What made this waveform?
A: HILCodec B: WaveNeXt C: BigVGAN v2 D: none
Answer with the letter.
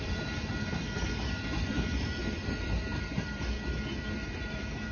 C